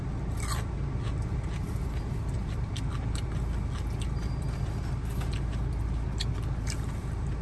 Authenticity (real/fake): real